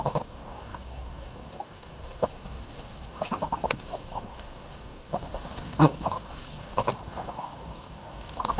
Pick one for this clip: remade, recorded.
remade